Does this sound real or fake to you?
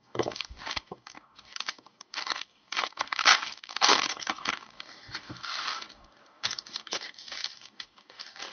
fake